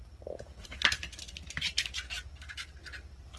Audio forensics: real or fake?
fake